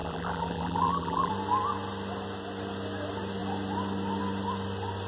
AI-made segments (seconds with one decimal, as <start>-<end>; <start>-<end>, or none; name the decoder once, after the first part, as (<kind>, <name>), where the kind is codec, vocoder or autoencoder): 0.0-1.3 (vocoder, BigVGAN v2)